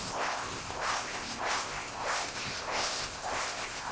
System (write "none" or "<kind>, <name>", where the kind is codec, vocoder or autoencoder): codec, ZipCodec